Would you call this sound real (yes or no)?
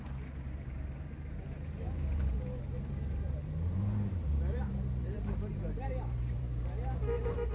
no